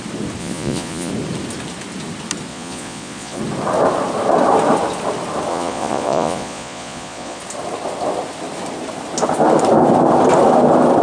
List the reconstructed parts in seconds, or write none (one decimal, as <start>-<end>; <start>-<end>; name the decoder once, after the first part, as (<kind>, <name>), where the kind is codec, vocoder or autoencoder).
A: 0.4-1.1 (vocoder, Vocos); 2.5-3.4; 5.5-7.4